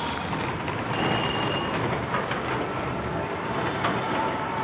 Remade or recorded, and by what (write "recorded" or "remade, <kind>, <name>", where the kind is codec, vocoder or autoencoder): recorded